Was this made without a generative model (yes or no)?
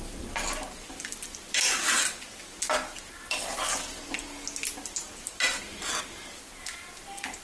yes